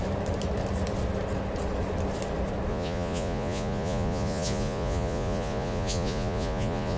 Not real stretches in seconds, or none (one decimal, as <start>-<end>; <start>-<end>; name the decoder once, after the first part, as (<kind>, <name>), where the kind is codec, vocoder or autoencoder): 2.7-7.0 (vocoder, Vocos)